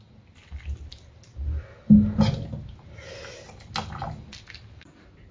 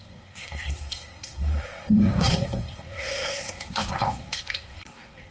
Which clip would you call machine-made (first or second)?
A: second